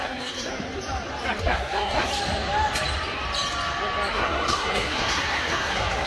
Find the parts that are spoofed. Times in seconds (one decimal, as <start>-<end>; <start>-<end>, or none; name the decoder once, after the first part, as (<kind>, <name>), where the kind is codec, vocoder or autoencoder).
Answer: 0.0-0.5 (codec, SNAC); 1.4-2.1; 4.1-6.1